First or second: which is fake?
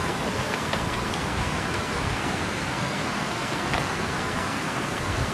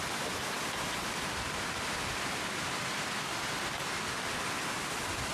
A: first